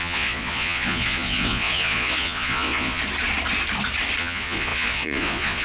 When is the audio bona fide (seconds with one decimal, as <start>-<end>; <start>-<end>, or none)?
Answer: 3.0-4.2

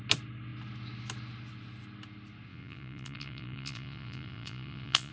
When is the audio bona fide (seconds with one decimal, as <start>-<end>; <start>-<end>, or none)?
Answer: 0.0-2.5

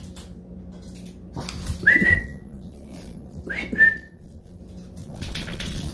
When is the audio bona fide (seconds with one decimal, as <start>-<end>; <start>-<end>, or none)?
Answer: 0.0-2.0; 3.4-3.9; 4.6-5.0